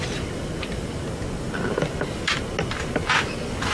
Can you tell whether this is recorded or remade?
recorded